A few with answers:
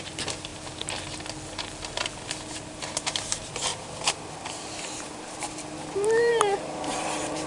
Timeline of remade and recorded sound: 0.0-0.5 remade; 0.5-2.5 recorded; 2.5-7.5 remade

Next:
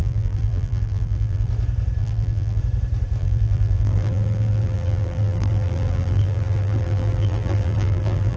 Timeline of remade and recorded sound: 0.0-1.5 remade; 1.5-2.0 recorded; 2.0-2.6 remade; 2.6-3.2 recorded; 3.2-8.4 remade

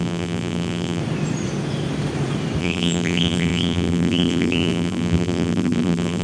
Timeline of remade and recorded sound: 0.0-1.0 remade; 1.0-2.6 recorded; 2.6-6.2 remade

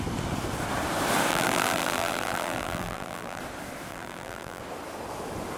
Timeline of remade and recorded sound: 0.0-1.3 recorded; 1.3-3.4 remade; 3.4-3.9 recorded; 3.9-4.6 remade; 4.6-5.6 recorded

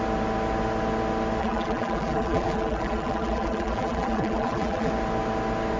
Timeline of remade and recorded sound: 0.0-1.4 recorded; 1.4-4.9 remade; 4.9-5.8 recorded

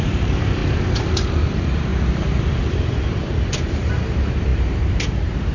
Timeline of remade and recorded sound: 0.0-0.6 remade; 0.6-1.3 recorded; 1.3-1.9 remade; 1.9-2.5 recorded; 2.5-5.5 remade

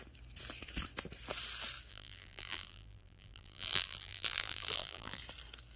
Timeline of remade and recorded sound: 0.0-1.9 recorded; 1.9-5.2 remade; 5.2-5.8 recorded